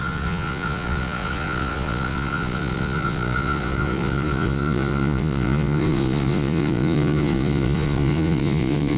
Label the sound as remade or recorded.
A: remade